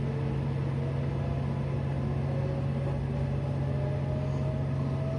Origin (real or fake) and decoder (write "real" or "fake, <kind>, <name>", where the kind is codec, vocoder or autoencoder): real